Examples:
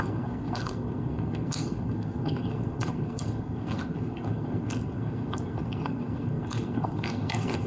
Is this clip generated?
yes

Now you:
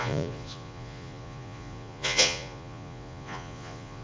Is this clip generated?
yes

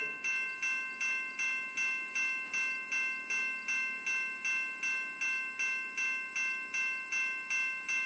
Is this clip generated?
no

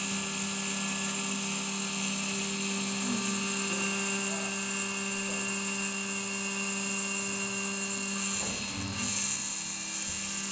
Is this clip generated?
no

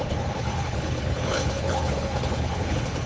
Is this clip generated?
yes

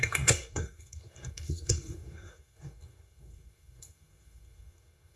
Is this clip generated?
yes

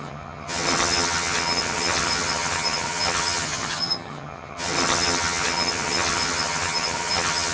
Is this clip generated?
yes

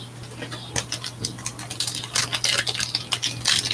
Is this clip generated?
no